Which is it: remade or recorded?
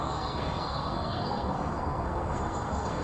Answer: remade